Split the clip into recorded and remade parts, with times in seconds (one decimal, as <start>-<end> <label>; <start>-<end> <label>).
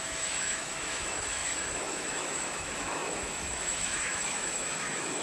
0.0-5.2 remade